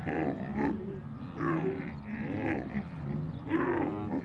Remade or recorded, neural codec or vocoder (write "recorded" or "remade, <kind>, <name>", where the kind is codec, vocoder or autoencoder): recorded